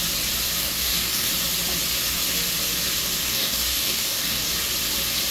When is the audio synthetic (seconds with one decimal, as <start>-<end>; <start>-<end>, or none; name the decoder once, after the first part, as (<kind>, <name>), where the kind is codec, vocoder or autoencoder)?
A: 0.6-1.3 (codec, DAC); 3.2-4.5